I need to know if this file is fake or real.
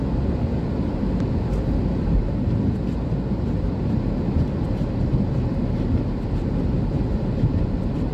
real